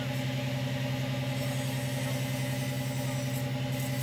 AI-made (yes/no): no